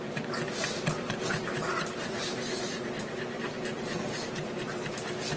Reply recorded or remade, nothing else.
recorded